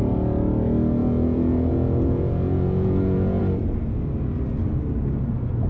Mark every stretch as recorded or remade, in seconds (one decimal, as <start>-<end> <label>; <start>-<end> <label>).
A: 0.0-1.0 recorded; 1.0-3.4 remade; 3.4-5.7 recorded